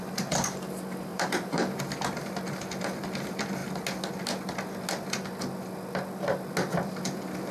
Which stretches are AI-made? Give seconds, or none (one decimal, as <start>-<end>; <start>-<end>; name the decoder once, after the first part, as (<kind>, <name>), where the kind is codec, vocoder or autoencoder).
1.1-1.8 (vocoder, BigVGAN v2)